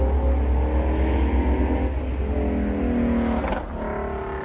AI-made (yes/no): no